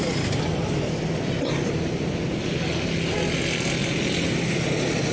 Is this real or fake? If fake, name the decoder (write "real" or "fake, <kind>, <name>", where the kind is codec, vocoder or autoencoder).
real